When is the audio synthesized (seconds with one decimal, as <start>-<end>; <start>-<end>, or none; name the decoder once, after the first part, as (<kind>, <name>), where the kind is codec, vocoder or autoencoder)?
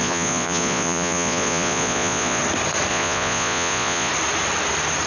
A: 0.0-2.4 (vocoder, Vocos); 2.9-4.1